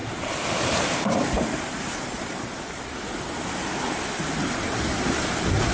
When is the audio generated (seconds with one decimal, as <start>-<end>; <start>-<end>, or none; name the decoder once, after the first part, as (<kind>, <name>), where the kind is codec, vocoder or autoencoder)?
0.0-2.8 (vocoder, BigVGAN v2)